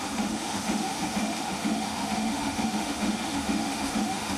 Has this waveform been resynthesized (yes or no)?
yes